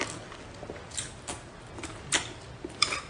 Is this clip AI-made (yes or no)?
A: no